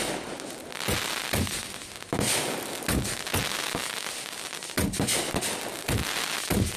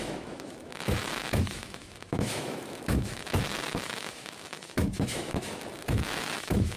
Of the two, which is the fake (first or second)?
second